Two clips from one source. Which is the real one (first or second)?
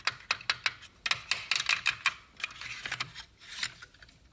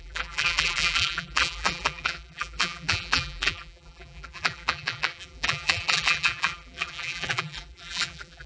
first